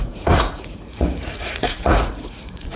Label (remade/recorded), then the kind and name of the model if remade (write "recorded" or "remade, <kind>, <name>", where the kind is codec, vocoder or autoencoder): remade, vocoder, Vocos